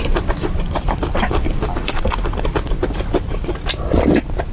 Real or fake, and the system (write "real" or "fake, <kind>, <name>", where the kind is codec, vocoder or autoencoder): fake, vocoder, BigVGAN v2